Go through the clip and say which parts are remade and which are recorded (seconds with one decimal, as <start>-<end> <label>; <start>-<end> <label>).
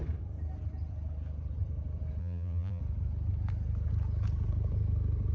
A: 0.0-2.2 recorded; 2.2-2.8 remade; 2.8-5.3 recorded